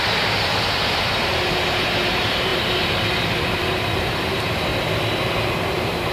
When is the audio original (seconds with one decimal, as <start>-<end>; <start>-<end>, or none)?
4.7-5.5